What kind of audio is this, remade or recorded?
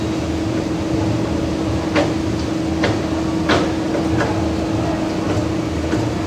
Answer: recorded